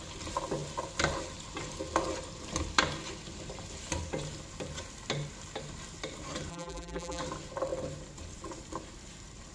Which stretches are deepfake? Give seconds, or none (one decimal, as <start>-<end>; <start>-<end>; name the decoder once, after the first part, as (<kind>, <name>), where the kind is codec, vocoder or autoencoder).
6.5-7.2 (vocoder, BigVGAN v2)